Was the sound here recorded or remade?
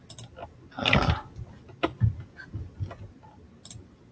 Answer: recorded